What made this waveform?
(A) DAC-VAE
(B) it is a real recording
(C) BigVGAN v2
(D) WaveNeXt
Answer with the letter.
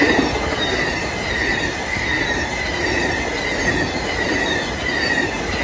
B